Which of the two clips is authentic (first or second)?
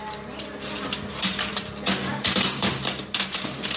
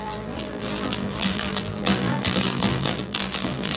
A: first